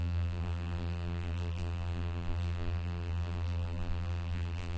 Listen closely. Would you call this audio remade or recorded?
remade